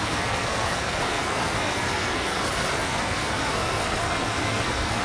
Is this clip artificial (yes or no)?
yes